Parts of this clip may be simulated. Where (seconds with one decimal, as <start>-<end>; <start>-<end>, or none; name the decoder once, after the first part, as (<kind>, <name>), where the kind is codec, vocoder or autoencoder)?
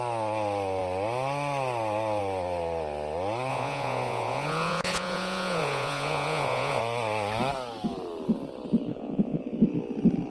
3.5-6.8 (vocoder, Vocos); 8.9-9.4